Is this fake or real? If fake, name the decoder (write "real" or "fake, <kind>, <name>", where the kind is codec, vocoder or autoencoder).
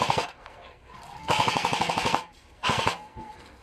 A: fake, codec, SNAC